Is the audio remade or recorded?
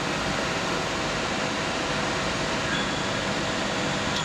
recorded